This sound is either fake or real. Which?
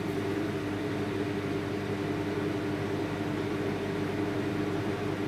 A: real